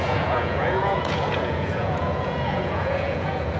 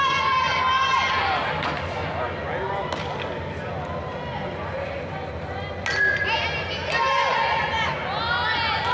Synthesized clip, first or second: first